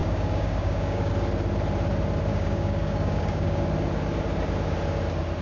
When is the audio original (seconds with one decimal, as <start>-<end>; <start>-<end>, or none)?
1.1-2.3; 3.6-5.4